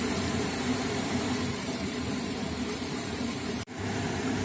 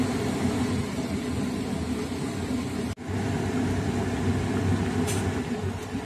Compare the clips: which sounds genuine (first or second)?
second